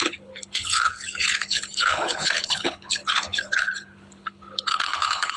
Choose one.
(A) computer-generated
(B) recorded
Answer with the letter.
A